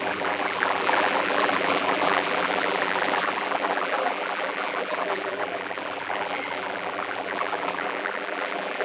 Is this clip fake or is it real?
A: fake